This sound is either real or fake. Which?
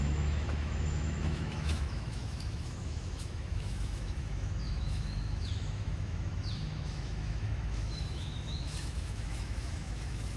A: fake